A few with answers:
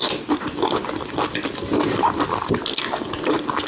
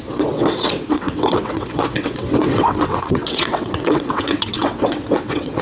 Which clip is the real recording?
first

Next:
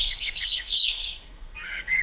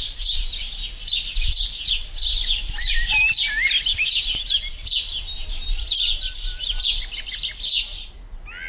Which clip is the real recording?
second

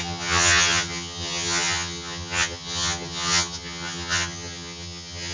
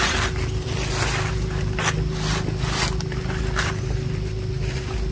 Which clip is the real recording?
second